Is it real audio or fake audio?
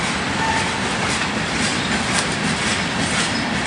real